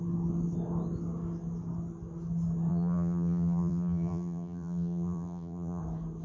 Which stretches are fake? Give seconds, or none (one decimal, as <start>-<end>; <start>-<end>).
2.7-5.8